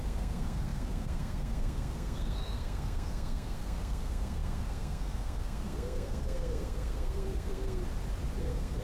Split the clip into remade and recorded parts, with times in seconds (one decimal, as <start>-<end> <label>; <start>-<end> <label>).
0.0-7.8 remade; 7.8-8.4 recorded; 8.4-8.8 remade